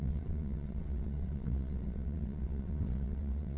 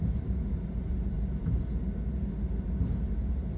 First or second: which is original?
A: second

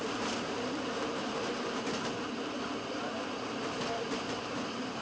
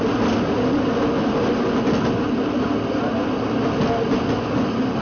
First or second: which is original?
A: second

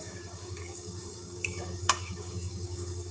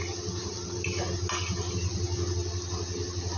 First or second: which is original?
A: second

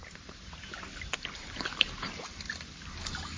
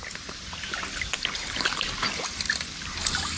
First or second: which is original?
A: first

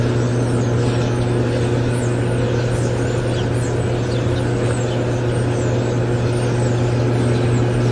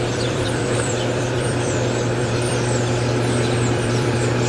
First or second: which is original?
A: first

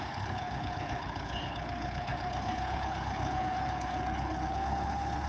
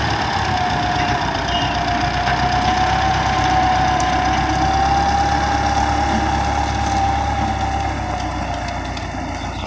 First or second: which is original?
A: second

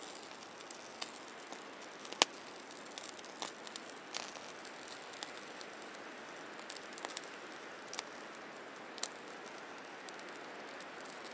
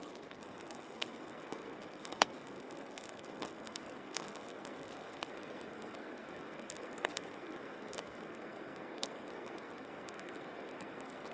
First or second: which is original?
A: first